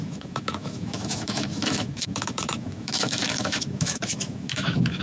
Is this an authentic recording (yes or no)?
no